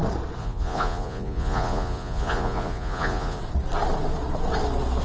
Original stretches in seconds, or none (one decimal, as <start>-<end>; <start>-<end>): 0.0-0.4; 3.4-5.0